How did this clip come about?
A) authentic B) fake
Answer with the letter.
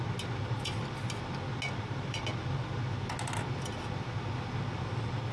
A